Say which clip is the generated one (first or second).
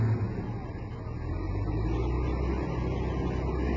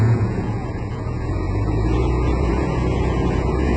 second